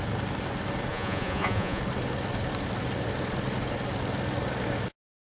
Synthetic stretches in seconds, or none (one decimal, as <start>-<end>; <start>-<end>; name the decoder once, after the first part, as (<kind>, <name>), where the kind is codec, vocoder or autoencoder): 0.9-1.8 (vocoder, Vocos)